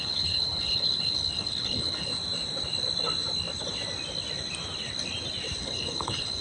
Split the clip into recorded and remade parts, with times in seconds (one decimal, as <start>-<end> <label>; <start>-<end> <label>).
0.0-2.1 remade; 2.1-5.6 recorded; 5.6-6.4 remade